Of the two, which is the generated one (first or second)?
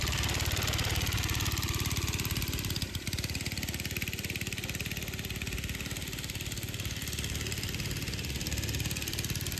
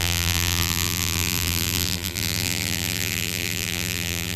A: second